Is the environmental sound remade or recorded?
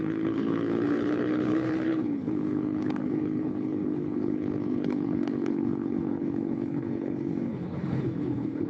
remade